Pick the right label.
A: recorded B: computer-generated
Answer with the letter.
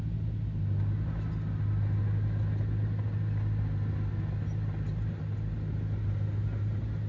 A